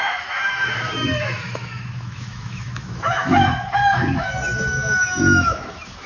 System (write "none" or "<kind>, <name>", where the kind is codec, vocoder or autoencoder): autoencoder, DAC-VAE